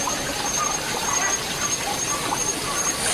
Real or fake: real